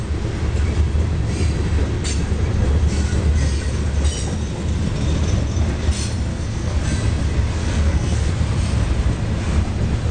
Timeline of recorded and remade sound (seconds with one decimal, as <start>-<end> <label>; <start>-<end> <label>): 0.0-6.3 recorded; 6.3-6.8 remade; 6.8-7.6 recorded; 7.6-8.3 remade; 8.3-10.1 recorded